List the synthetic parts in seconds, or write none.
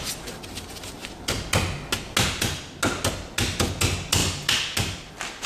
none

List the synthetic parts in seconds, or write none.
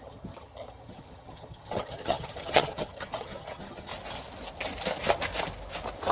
0.0-3.9 (vocoder, HiFi-GAN)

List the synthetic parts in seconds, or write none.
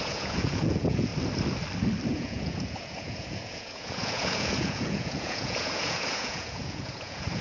0.0-1.1 (vocoder, Vocos); 2.1-7.4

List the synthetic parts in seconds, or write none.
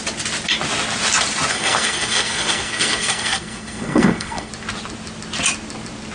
1.5-4.5 (codec, SNAC)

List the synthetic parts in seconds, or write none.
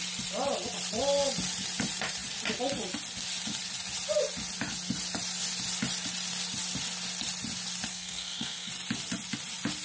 7.9-8.7 (codec, SNAC)